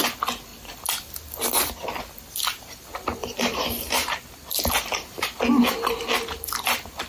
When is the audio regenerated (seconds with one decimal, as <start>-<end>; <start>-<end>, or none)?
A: 3.2-4.1